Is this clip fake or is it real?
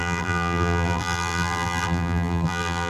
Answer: fake